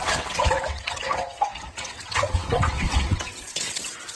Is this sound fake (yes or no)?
yes